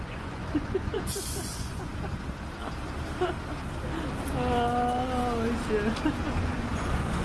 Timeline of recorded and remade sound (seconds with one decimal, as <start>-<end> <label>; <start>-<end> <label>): 0.0-1.9 remade; 1.9-6.2 recorded; 6.2-7.2 remade